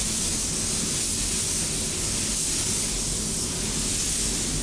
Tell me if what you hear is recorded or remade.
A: recorded